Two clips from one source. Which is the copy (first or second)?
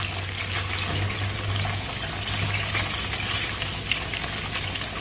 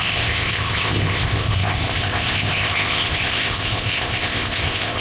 second